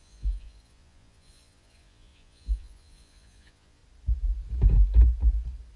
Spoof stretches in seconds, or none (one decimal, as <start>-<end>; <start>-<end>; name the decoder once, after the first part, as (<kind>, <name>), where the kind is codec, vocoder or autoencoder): 0.0-3.8 (vocoder, Vocos)